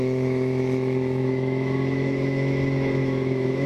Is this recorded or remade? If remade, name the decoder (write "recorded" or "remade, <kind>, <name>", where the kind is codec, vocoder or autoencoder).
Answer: remade, autoencoder, DAC-VAE